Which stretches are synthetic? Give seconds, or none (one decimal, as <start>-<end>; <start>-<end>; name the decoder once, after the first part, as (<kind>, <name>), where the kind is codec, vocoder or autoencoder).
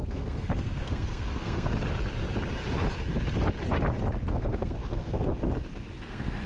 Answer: 0.0-1.7 (codec, SNAC); 4.3-5.3; 6.0-6.5